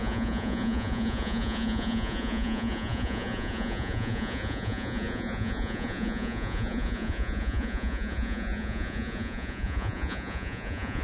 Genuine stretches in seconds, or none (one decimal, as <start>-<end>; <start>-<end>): none